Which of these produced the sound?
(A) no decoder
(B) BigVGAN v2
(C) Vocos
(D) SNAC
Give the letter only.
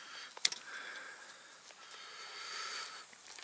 A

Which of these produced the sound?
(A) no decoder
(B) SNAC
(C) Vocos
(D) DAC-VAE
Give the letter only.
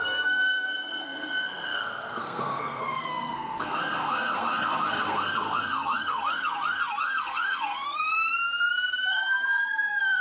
B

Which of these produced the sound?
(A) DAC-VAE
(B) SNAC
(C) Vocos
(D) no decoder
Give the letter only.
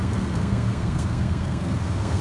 B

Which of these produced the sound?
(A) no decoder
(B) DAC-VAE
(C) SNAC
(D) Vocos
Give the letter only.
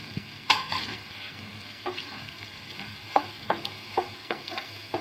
C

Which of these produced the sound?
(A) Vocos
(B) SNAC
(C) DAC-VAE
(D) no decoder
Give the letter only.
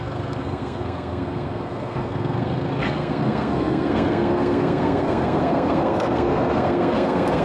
B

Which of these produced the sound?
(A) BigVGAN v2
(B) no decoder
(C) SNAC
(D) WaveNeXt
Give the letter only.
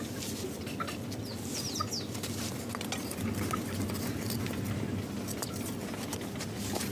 B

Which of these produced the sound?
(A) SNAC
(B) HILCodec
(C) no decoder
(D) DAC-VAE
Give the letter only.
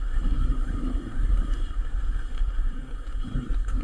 A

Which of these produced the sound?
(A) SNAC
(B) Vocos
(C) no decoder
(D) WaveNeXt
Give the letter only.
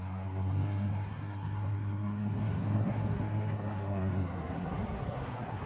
A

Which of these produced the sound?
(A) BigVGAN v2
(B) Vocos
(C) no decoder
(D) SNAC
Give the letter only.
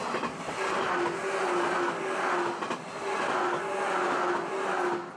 C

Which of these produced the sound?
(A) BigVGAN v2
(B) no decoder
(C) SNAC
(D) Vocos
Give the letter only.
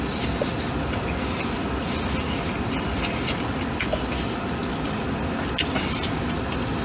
B